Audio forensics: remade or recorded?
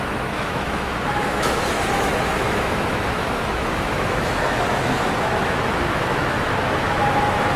remade